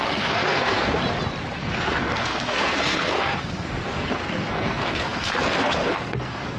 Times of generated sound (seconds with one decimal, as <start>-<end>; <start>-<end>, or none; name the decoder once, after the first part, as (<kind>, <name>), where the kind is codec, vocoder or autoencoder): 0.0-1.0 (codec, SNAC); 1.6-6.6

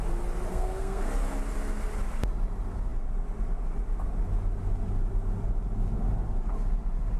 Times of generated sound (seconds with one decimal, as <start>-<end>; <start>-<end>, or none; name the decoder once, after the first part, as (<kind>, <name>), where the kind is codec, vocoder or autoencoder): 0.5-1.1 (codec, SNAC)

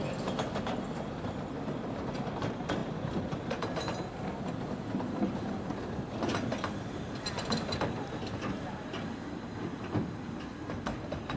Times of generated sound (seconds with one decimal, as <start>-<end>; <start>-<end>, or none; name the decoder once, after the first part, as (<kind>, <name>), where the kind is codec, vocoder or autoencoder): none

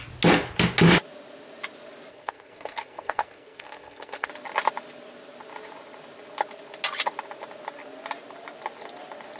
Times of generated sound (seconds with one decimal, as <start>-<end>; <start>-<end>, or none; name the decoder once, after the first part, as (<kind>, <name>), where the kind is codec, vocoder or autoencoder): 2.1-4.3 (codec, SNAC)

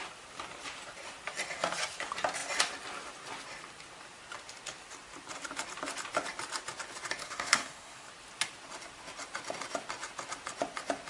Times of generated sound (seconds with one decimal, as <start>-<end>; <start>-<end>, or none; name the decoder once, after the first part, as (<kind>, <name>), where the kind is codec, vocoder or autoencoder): 7.2-8.1 (codec, SNAC)